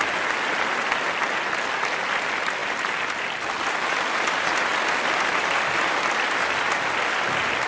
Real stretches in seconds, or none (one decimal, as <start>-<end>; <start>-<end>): 0.0-2.6; 3.5-7.7